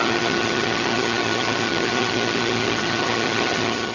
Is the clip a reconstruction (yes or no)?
yes